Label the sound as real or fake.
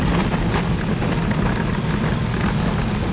real